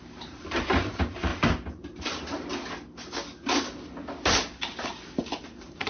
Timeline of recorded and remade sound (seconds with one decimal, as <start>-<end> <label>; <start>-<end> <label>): 0.0-1.3 remade; 1.3-4.8 recorded; 4.8-5.9 remade